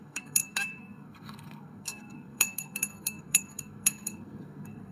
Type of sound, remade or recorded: remade